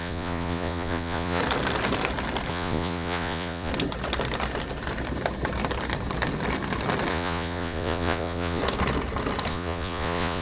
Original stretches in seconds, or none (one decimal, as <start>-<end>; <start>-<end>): 1.4-2.5; 3.7-7.1; 8.6-9.5